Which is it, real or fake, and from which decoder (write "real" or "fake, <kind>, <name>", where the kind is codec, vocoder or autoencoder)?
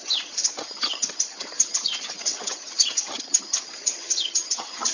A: fake, vocoder, HiFi-GAN